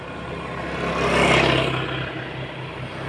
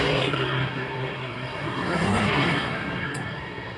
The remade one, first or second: second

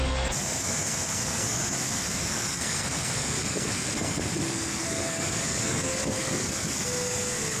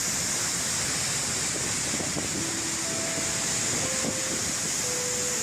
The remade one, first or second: first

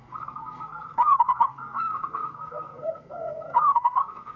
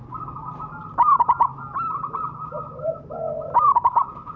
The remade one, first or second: first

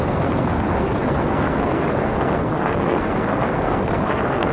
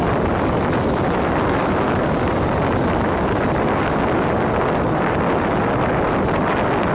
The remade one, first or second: first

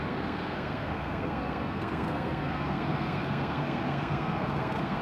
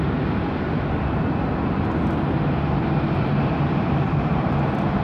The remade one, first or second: first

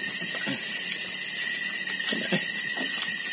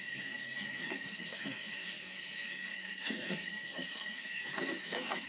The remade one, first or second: second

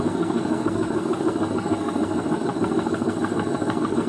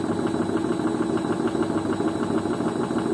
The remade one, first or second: first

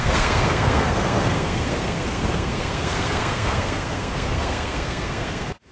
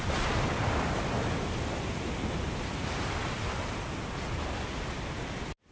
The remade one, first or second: first